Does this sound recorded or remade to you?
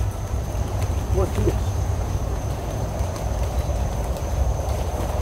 remade